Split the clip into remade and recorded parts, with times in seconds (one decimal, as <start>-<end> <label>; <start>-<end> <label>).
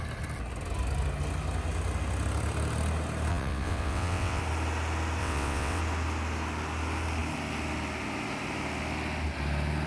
0.0-3.3 recorded; 3.3-4.4 remade; 4.4-5.2 recorded; 5.2-5.8 remade; 5.8-9.9 recorded